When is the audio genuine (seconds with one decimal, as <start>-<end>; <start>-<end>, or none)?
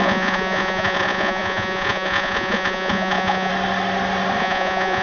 3.5-4.4